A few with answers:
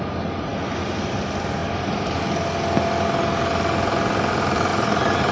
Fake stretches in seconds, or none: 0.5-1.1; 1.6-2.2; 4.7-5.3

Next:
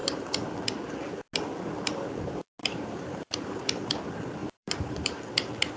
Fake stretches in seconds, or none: 0.0-0.6; 2.6-3.6; 4.4-5.2

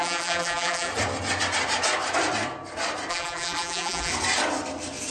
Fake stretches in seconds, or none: 0.0-0.9; 3.1-4.1

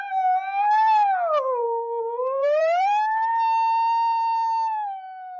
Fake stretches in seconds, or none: 1.6-3.3

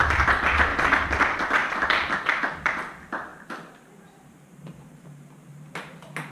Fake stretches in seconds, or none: 0.0-0.7; 1.2-3.3; 4.0-6.3

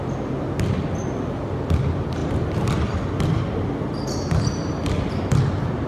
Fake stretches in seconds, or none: 1.4-5.9

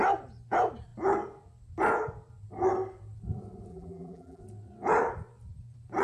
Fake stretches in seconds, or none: 3.7-4.4

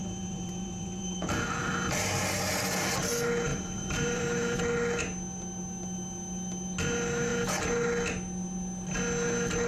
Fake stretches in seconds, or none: 0.0-1.7; 3.5-4.6